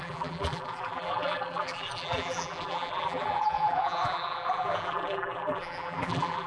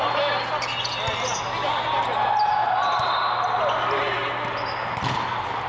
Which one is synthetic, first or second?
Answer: first